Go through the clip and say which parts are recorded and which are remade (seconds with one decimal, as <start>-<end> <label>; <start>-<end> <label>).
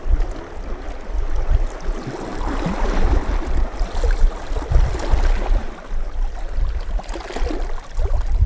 0.0-8.5 recorded